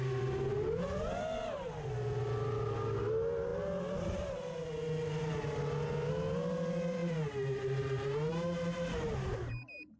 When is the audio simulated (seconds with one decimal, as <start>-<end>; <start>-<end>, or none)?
7.0-9.5